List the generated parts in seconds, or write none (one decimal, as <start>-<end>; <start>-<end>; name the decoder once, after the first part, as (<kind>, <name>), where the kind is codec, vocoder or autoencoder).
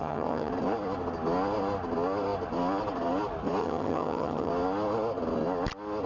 0.0-0.5 (vocoder, HiFi-GAN); 3.6-4.5